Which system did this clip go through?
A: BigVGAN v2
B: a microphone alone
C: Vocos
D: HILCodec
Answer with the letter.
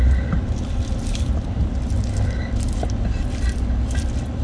A